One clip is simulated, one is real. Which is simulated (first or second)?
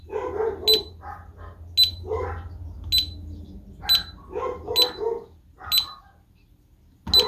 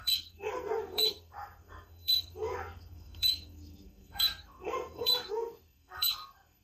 second